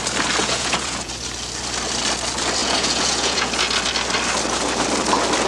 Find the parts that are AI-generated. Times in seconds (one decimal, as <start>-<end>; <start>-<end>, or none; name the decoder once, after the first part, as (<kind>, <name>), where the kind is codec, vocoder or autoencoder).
0.4-1.1 (vocoder, Vocos); 2.6-3.5